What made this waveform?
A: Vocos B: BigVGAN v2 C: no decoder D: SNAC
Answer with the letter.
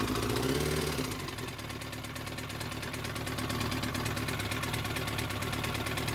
C